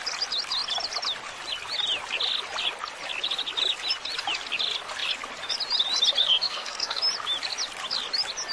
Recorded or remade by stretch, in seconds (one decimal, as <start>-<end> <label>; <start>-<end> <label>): 0.0-6.2 recorded; 6.2-7.0 remade; 7.0-8.5 recorded